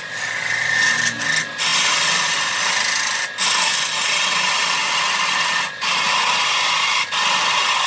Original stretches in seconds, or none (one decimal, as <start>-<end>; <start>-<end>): 0.0-7.9